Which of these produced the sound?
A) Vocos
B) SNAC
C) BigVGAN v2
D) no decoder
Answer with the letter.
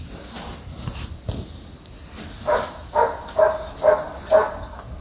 D